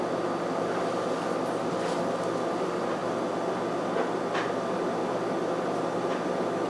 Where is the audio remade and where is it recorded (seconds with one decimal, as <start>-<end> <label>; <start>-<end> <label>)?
0.0-6.7 recorded